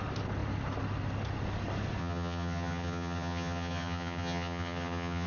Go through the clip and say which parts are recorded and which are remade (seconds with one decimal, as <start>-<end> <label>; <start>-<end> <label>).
0.0-2.0 recorded; 2.0-5.3 remade